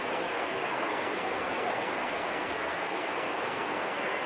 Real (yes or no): no